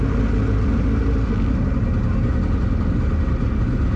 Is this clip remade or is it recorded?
recorded